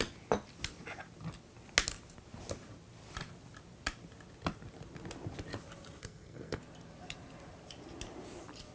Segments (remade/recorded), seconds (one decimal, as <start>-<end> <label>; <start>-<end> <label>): 0.0-6.0 recorded; 6.0-6.6 remade; 6.6-8.7 recorded